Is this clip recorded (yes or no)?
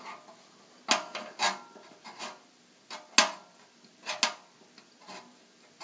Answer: yes